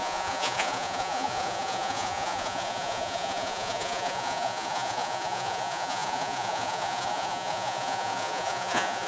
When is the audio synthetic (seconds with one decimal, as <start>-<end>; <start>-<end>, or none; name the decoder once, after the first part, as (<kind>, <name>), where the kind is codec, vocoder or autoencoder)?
0.0-9.1 (vocoder, Vocos)